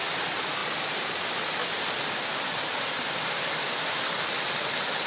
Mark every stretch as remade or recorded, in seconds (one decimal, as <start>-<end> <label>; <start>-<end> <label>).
0.0-5.1 recorded

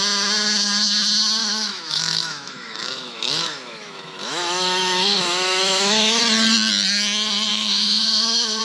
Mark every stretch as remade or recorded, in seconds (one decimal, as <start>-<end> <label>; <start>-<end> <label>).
0.0-1.4 recorded; 1.4-6.2 remade; 6.2-7.5 recorded; 7.5-8.6 remade

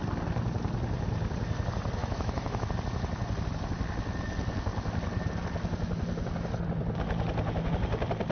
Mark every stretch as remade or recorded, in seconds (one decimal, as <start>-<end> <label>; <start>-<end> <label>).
0.0-2.0 recorded; 2.0-2.7 remade; 2.7-8.3 recorded

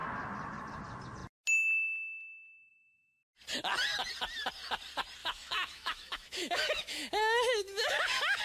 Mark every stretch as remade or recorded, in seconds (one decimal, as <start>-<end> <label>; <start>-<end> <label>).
0.0-5.2 recorded; 5.2-8.4 remade

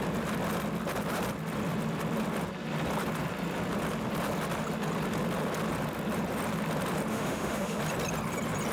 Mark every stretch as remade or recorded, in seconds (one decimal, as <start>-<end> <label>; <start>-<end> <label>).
0.0-7.1 recorded; 7.1-7.8 remade; 7.8-8.7 recorded